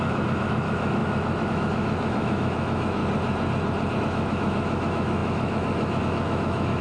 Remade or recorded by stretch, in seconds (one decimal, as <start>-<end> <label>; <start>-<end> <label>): 0.0-3.0 remade; 3.0-4.0 recorded; 4.0-6.8 remade